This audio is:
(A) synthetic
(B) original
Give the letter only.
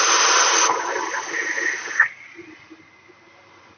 B